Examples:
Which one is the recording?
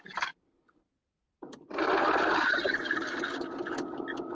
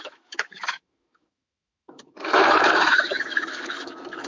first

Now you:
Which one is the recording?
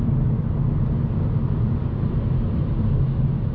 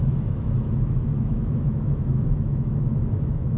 first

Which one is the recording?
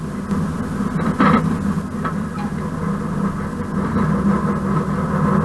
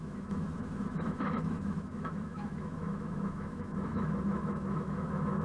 first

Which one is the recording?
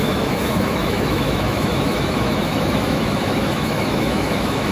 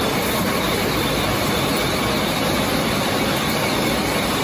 second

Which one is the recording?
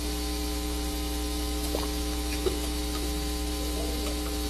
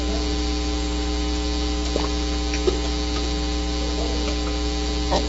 second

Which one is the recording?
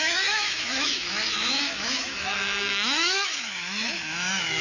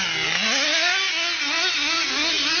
second